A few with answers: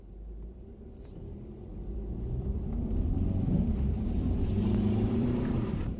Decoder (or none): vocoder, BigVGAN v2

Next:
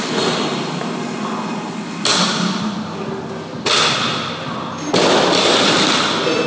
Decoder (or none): none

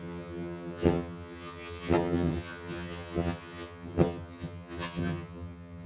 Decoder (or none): vocoder, HiFi-GAN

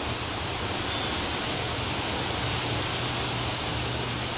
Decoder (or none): none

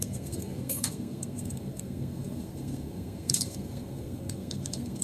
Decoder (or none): codec, SNAC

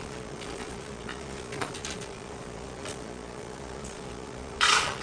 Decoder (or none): vocoder, Vocos